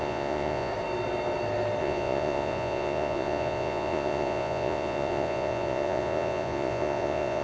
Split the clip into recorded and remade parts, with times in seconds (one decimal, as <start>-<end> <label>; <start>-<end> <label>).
0.0-0.7 remade; 0.7-1.8 recorded; 1.8-7.4 remade